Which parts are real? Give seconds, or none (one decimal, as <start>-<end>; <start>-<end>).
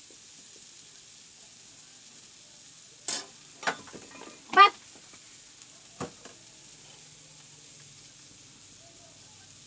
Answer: 0.0-9.7